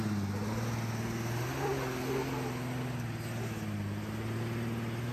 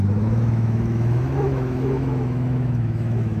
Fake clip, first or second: second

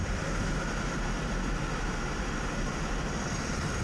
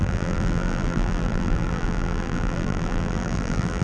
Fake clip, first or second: second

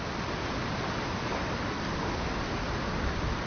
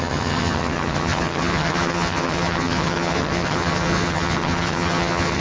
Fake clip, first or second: second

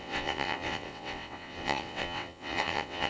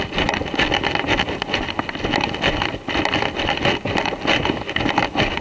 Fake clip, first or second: first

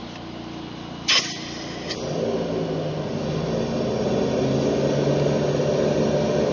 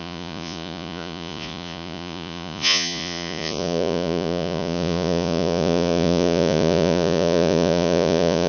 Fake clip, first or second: second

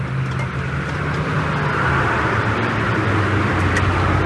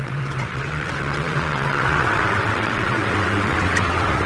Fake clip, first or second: second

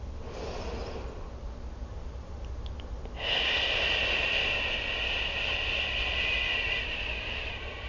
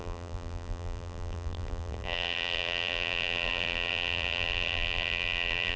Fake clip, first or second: second